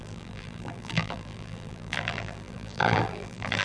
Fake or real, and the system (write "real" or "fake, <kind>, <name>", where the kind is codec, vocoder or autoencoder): fake, vocoder, BigVGAN v2